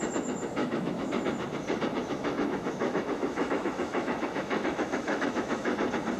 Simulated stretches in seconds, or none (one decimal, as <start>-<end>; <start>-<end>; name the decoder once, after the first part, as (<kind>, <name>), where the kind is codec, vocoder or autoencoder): 0.6-1.1 (autoencoder, DAC-VAE); 2.0-5.7